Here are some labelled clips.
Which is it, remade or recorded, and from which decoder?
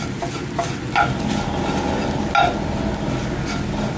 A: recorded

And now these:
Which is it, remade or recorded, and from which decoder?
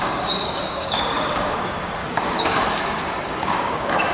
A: remade, codec, DAC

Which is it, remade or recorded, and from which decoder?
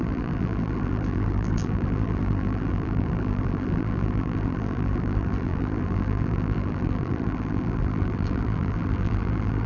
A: remade, vocoder, BigVGAN v2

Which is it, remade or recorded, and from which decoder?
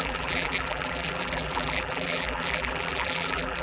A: remade, vocoder, BigVGAN v2